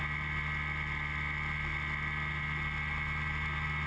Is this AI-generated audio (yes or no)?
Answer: no